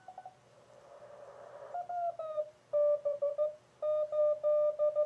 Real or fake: real